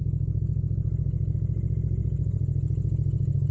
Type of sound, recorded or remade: recorded